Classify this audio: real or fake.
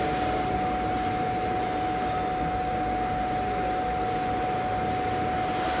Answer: real